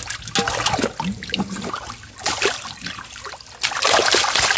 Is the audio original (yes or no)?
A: yes